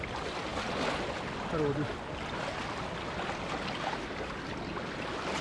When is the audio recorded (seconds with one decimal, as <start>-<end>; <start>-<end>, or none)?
0.0-5.4